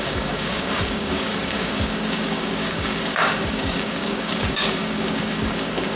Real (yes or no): no